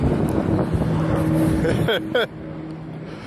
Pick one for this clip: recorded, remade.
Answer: recorded